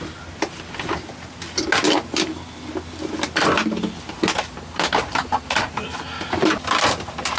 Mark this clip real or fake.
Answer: real